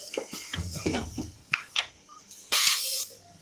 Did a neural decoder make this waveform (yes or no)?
yes